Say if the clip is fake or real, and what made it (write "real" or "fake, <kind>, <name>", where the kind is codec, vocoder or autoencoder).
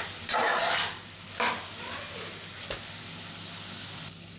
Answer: real